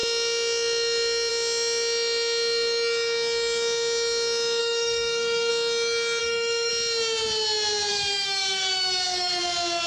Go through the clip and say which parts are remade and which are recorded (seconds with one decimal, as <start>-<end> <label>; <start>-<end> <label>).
0.0-4.6 recorded; 4.6-5.5 remade; 5.5-6.2 recorded; 6.2-6.7 remade; 6.7-7.9 recorded; 7.9-9.4 remade; 9.4-9.9 recorded